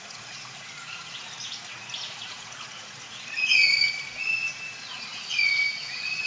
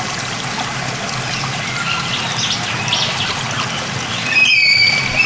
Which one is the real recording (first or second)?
second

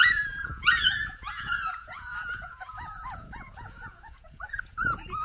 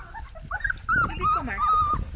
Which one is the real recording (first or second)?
second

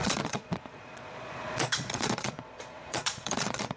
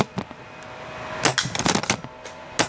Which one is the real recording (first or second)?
second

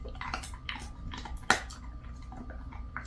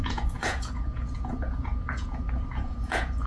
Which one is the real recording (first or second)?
first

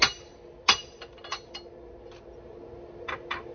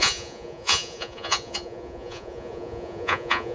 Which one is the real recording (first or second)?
first